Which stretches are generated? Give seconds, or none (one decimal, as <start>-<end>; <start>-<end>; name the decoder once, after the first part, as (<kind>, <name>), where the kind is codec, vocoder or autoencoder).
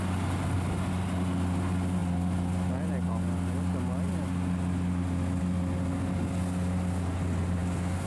none